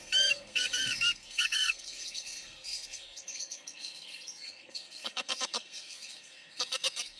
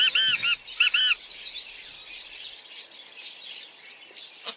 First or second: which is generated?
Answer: first